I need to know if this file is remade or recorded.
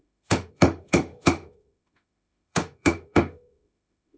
remade